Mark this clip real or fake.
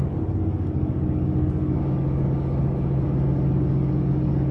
fake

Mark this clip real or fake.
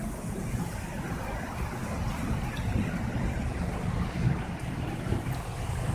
real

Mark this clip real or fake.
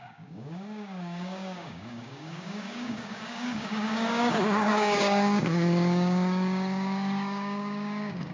fake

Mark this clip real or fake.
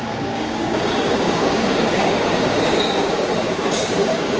fake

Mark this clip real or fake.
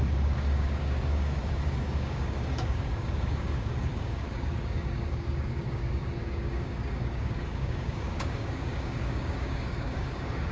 fake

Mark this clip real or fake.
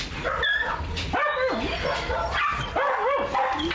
real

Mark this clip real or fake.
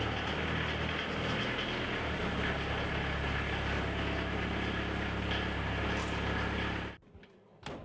real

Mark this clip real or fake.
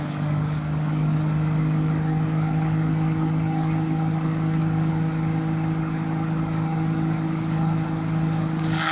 fake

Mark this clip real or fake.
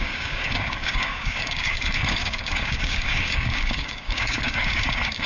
fake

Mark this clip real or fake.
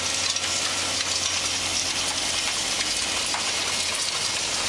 real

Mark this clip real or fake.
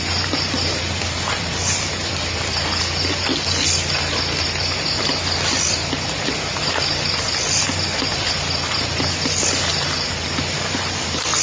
real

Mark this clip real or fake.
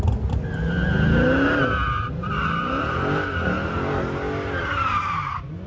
real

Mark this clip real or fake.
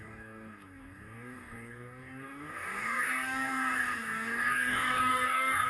fake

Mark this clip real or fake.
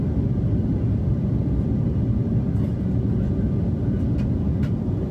real